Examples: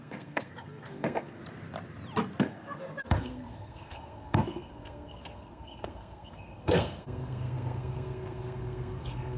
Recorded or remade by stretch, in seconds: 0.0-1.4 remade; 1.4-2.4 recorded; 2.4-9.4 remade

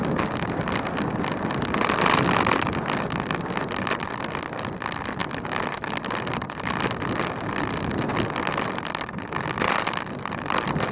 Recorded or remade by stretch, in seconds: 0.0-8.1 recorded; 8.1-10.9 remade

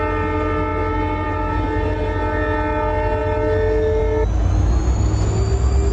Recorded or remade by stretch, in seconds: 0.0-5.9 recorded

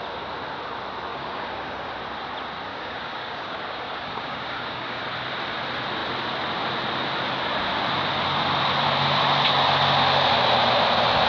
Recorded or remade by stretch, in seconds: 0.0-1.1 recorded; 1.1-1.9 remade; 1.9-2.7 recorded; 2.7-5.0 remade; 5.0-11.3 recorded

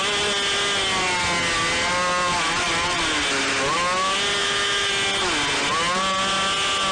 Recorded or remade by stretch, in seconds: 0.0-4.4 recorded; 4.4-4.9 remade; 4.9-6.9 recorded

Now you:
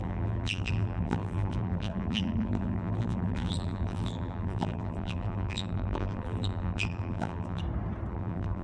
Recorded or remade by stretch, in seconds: 0.0-7.6 remade; 7.6-8.1 recorded; 8.1-8.6 remade

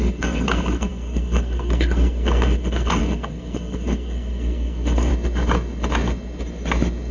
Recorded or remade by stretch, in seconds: 0.0-5.1 remade; 5.1-7.1 recorded